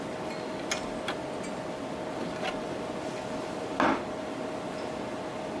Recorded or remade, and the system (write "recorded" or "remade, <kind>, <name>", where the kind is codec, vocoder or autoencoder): recorded